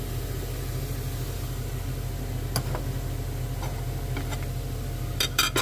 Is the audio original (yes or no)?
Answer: yes